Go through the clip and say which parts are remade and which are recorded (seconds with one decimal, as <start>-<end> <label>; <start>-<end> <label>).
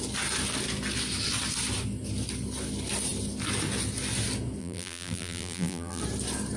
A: 0.0-4.6 recorded; 4.6-6.0 remade; 6.0-6.6 recorded